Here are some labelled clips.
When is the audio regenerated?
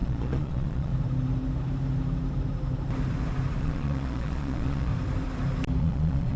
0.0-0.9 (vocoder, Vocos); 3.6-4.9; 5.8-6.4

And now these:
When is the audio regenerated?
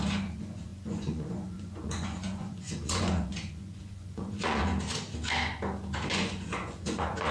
0.0-4.7 (vocoder, Vocos); 6.1-7.3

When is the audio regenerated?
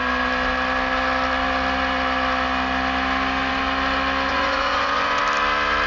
4.3-5.2 (vocoder, Vocos)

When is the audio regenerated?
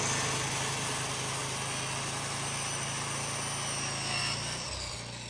none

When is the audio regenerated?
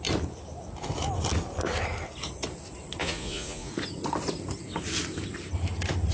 3.0-3.7 (vocoder, Vocos)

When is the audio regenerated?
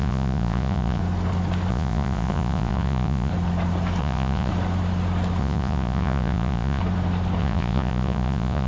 0.0-1.0 (vocoder, Vocos); 1.7-3.3; 4.0-4.5; 5.4-6.8; 7.4-8.7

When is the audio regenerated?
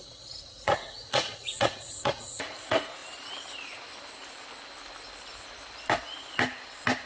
0.0-3.0 (vocoder, Vocos)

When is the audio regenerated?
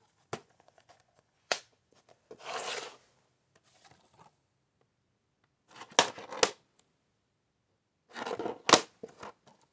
0.4-2.0 (vocoder, Vocos)